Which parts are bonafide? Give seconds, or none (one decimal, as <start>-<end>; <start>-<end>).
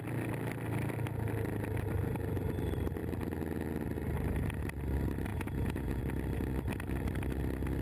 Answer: 0.0-5.3; 6.0-7.8